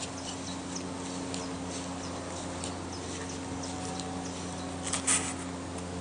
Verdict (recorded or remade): recorded